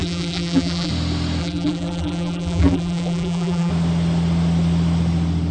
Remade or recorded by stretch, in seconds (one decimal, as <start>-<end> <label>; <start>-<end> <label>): 0.0-0.9 remade; 0.9-1.4 recorded; 1.4-3.7 remade; 3.7-5.5 recorded